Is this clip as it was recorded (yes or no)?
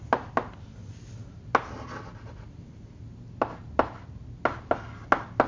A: yes